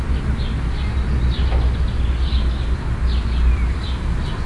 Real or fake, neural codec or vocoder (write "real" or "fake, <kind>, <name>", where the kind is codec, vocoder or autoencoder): real